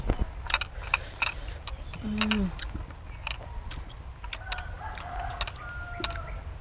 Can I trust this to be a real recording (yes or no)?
yes